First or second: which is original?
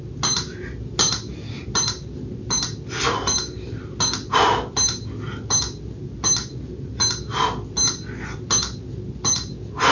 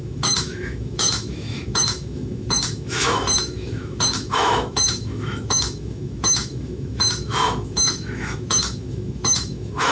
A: first